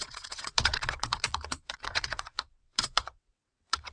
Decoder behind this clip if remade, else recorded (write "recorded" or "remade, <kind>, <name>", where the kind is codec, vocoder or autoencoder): remade, vocoder, WaveNeXt